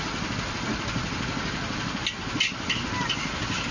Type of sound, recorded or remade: recorded